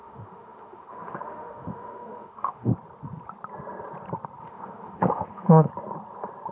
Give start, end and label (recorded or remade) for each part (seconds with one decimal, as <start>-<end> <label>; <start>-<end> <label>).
0.0-2.7 remade; 2.7-4.4 recorded; 4.4-5.7 remade; 5.7-6.5 recorded

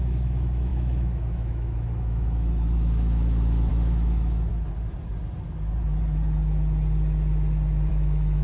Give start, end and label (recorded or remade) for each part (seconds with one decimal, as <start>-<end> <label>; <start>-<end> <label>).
0.0-4.5 remade; 4.5-7.9 recorded; 7.9-8.4 remade

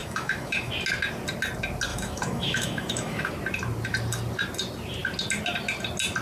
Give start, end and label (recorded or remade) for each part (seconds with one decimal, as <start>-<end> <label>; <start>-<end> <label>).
0.0-0.7 remade; 0.7-1.9 recorded; 1.9-3.3 remade; 3.3-6.2 recorded

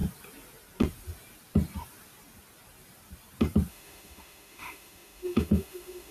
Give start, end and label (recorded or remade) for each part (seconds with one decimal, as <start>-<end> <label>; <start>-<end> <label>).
0.0-3.7 recorded; 3.7-6.1 remade

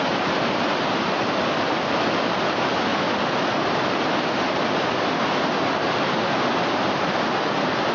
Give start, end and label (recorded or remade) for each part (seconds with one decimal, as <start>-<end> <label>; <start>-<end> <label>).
0.0-7.9 recorded

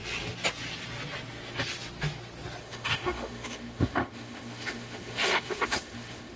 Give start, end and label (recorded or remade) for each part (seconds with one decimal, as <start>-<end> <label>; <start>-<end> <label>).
0.0-2.6 recorded; 2.6-6.4 remade

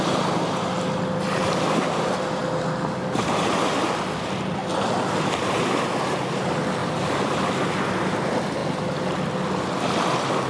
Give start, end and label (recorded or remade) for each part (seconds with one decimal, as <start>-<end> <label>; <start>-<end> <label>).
0.0-10.5 recorded